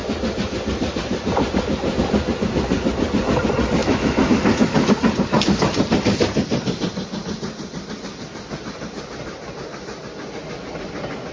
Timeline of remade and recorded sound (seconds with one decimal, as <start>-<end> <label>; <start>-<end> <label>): 0.0-3.8 recorded; 3.8-4.3 remade; 4.3-11.3 recorded